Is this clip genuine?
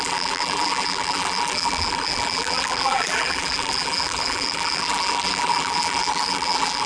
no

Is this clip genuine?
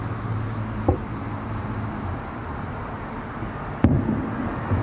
yes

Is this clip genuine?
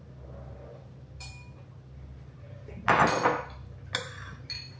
yes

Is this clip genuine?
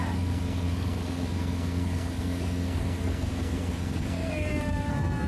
no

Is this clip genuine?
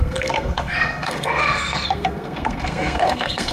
no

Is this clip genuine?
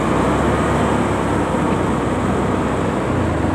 yes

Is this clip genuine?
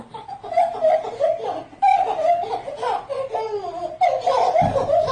yes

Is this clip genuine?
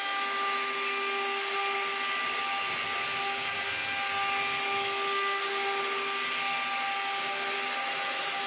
yes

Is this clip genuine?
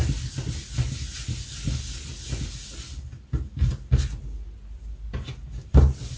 yes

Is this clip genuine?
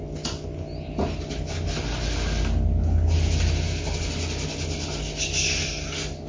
yes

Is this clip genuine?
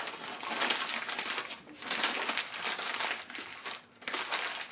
yes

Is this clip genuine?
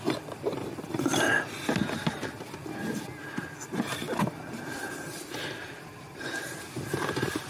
yes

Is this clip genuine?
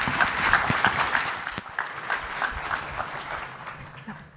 yes